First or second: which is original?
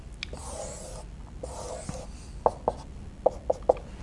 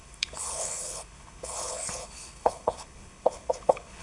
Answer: first